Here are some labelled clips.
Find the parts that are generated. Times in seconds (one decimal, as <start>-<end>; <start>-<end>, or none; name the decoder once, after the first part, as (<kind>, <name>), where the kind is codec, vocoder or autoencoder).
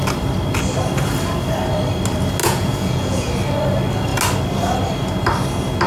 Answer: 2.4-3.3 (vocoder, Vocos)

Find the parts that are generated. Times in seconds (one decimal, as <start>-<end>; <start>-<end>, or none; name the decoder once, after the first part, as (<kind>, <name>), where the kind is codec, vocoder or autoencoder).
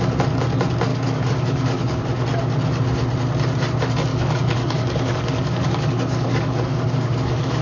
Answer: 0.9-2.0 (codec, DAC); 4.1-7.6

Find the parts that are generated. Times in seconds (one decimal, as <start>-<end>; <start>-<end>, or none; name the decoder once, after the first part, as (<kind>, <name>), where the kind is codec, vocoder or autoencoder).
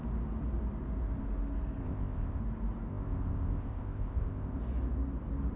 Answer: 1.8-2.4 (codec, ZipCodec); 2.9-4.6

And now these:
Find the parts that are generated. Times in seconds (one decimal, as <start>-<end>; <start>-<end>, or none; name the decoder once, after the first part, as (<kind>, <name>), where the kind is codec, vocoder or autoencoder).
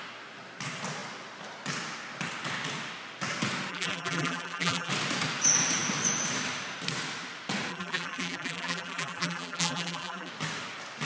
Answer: 3.7-4.9 (vocoder, BigVGAN v2); 7.7-10.3